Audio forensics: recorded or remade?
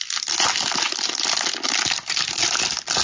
recorded